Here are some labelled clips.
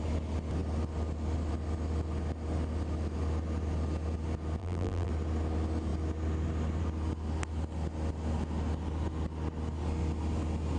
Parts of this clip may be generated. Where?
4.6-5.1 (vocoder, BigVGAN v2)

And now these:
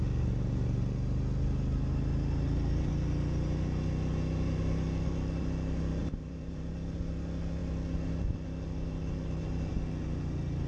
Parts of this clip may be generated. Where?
6.0-6.7 (vocoder, BigVGAN v2)

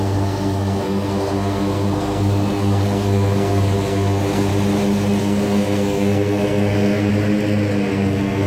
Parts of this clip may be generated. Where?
0.0-4.5 (codec, SNAC); 5.2-7.1; 7.9-8.5

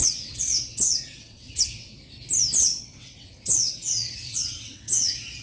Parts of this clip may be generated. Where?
0.0-1.9 (vocoder, WaveNeXt); 2.6-5.4

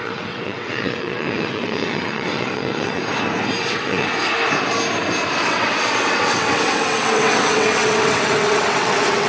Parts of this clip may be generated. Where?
0.0-3.0 (vocoder, WaveNeXt); 3.6-4.1; 5.4-9.3

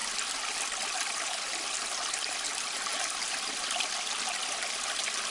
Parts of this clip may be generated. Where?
none